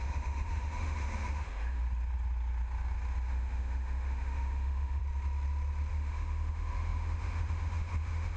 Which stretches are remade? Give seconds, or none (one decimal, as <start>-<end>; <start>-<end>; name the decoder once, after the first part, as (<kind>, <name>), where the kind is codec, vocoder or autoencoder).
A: 0.0-1.8 (autoencoder, DAC-VAE); 3.3-5.0; 5.9-8.4